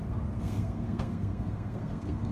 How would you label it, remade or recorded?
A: remade